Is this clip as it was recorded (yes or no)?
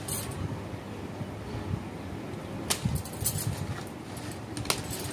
yes